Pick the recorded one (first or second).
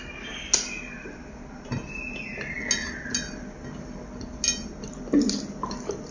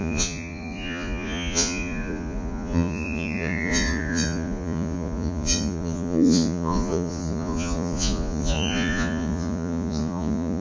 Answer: first